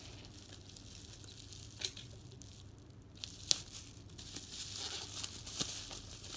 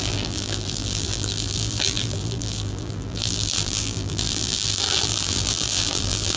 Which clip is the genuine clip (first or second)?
first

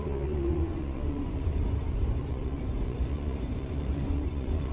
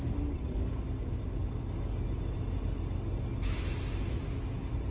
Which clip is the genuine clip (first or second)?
second